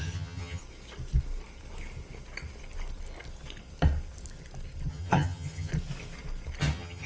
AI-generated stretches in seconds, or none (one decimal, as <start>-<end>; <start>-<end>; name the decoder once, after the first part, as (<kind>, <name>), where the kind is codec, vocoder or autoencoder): 0.0-0.6 (vocoder, HiFi-GAN); 4.9-5.7; 6.6-7.1